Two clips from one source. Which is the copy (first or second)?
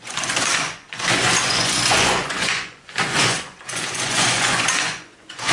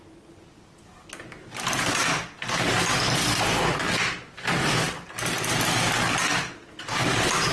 first